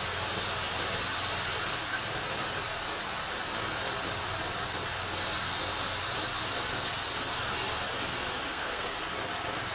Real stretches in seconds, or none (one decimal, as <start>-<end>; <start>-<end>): 0.0-8.5; 9.0-9.7